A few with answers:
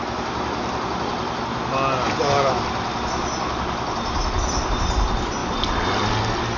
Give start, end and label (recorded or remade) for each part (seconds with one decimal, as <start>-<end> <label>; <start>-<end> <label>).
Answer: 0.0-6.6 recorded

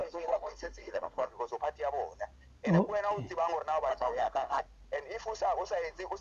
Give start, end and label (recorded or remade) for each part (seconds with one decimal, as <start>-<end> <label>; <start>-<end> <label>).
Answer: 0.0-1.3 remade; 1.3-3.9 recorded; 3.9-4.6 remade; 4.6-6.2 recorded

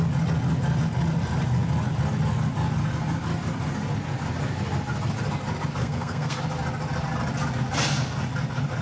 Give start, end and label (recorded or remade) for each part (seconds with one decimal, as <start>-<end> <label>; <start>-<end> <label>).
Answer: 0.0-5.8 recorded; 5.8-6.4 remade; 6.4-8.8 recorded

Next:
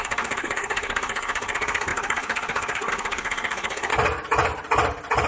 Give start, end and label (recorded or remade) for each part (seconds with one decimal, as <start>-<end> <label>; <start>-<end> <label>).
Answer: 0.0-3.9 remade; 3.9-5.3 recorded

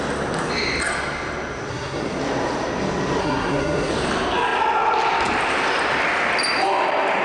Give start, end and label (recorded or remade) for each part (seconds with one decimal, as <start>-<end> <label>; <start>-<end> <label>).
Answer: 0.0-1.7 recorded; 1.7-2.2 remade; 2.2-3.2 recorded; 3.2-3.9 remade; 3.9-7.2 recorded

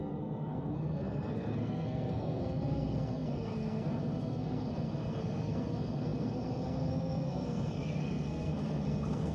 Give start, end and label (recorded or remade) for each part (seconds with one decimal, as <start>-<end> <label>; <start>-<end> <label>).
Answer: 0.0-9.3 remade

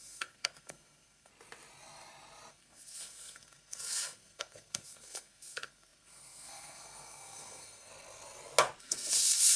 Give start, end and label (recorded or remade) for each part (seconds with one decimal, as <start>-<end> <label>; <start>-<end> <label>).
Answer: 0.0-1.3 remade; 1.3-2.5 recorded; 2.5-7.9 remade; 7.9-8.8 recorded; 8.8-9.6 remade